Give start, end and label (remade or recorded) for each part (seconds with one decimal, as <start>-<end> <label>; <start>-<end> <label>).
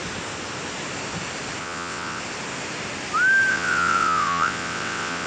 0.0-1.6 recorded; 1.6-2.2 remade; 2.2-3.5 recorded; 3.5-5.3 remade